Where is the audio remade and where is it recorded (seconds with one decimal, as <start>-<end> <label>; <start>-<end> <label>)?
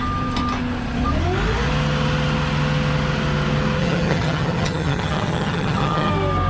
0.0-3.8 recorded; 3.8-6.1 remade; 6.1-6.5 recorded